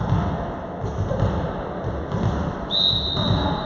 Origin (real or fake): real